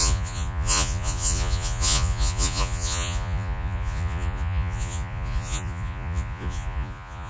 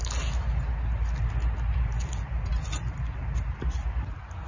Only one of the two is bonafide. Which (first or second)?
second